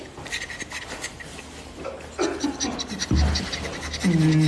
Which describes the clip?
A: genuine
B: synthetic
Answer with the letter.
A